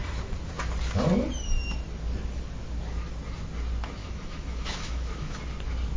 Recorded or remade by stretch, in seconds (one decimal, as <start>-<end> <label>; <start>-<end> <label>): 0.0-4.0 recorded; 4.0-5.4 remade; 5.4-6.0 recorded